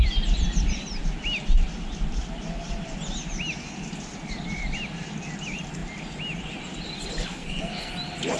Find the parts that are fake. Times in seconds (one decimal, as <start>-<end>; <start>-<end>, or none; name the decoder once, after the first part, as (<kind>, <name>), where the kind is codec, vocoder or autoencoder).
7.3-7.9 (codec, SNAC)